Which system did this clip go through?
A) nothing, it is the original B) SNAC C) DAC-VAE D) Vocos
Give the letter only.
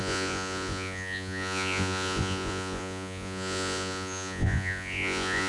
D